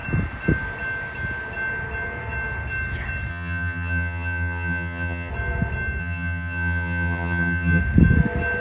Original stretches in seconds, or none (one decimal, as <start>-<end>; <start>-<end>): 0.0-3.3; 5.3-6.0; 7.8-8.6